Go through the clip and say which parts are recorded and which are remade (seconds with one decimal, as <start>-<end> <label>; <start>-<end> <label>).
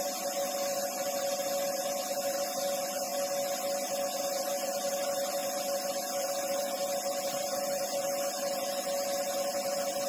0.0-10.1 recorded